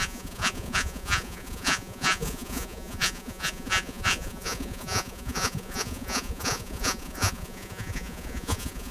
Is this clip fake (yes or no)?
yes